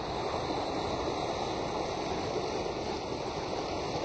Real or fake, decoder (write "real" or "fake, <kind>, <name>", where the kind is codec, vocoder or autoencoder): real